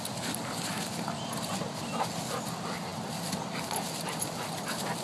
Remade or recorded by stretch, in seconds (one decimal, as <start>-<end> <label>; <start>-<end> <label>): 0.0-5.0 recorded